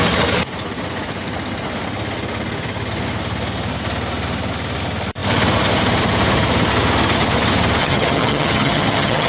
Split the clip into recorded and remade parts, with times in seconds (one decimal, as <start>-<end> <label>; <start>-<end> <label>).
0.0-7.8 recorded; 7.8-9.3 remade